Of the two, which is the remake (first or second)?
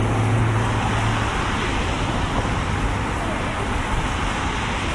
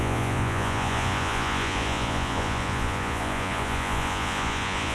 second